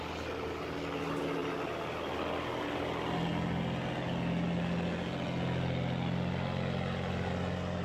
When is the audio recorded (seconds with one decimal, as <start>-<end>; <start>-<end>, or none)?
0.0-7.8